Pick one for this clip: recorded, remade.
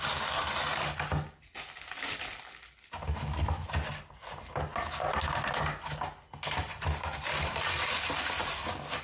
recorded